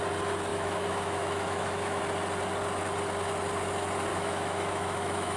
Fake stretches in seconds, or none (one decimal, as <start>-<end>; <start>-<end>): 0.5-2.0; 4.1-5.4